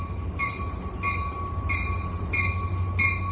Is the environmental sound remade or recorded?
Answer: recorded